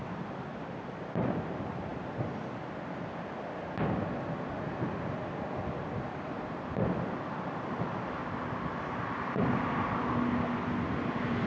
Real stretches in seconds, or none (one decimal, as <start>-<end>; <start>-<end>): 0.0-11.5

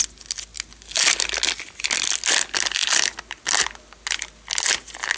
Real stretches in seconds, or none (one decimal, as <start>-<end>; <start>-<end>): 0.0-5.2

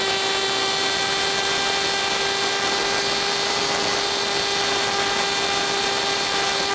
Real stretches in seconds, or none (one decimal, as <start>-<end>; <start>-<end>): 0.0-6.7

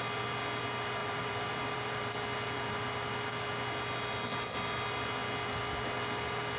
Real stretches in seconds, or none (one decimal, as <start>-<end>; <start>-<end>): 0.0-1.0; 2.1-6.6

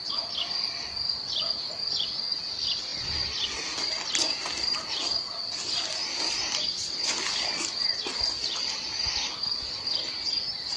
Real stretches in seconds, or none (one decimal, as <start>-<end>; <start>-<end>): 0.0-10.8

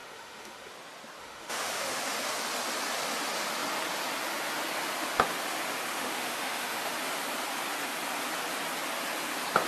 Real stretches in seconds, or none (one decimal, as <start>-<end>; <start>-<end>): 0.7-1.2; 2.0-5.9; 7.0-9.7